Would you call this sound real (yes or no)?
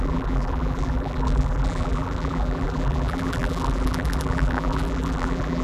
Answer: no